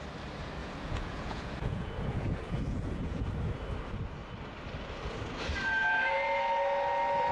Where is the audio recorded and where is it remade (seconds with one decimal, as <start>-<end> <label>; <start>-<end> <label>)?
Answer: 0.0-0.6 recorded; 0.6-3.3 remade; 3.3-7.3 recorded